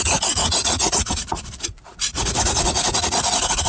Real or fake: fake